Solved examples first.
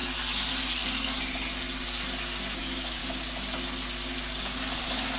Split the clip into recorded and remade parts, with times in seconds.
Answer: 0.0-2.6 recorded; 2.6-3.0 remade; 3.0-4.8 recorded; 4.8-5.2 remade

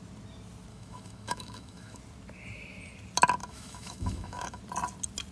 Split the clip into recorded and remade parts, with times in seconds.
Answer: 0.0-0.7 recorded; 0.7-2.0 remade; 2.0-3.4 recorded; 3.4-4.6 remade; 4.6-5.3 recorded

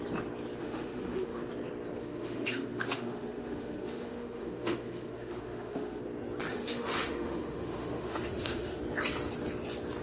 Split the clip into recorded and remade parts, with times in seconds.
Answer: 0.0-0.6 recorded; 0.6-1.4 remade; 1.4-2.0 recorded; 2.0-6.0 remade; 6.0-6.5 recorded; 6.5-8.8 remade; 8.8-10.0 recorded

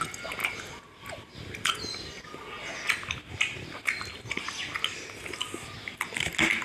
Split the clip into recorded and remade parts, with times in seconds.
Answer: 0.0-6.6 recorded

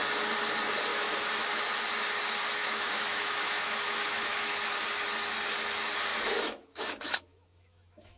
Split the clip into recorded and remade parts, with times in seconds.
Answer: 0.0-0.9 recorded; 0.9-1.6 remade; 1.6-2.6 recorded; 2.6-4.8 remade; 4.8-6.1 recorded; 6.1-8.2 remade